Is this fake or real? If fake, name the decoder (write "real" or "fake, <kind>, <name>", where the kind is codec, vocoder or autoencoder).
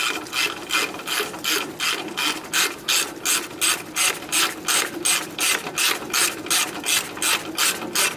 real